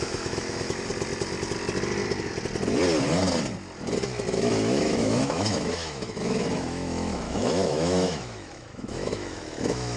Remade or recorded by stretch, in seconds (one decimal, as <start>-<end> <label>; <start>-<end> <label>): 0.0-0.9 remade; 0.9-4.3 recorded; 4.3-10.0 remade